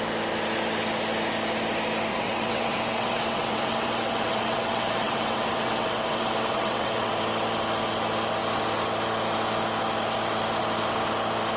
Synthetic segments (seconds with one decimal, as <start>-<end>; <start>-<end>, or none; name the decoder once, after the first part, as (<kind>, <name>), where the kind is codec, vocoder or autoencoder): 2.1-7.1 (vocoder, WaveNeXt)